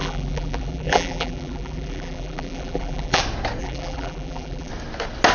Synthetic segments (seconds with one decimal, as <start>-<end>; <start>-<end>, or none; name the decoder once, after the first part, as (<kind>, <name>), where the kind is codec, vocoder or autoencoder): 0.0-3.2 (vocoder, BigVGAN v2); 3.6-4.7